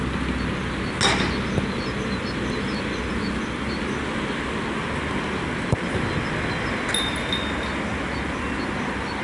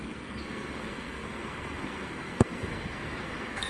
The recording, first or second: first